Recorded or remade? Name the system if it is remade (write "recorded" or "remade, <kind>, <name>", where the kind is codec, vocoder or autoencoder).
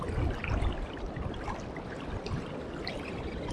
recorded